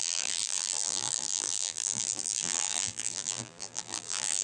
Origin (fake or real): fake